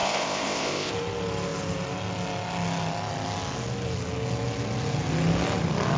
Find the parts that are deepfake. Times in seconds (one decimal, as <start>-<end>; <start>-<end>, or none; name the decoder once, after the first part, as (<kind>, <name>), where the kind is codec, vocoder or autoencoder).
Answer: 0.0-0.9 (codec, ZipCodec)